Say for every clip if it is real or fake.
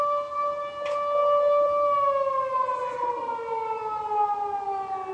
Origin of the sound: real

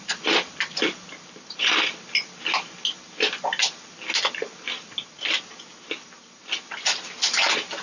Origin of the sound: real